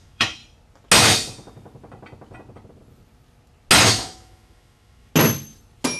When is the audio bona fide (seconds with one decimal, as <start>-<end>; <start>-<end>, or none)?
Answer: 0.4-3.8; 5.1-6.0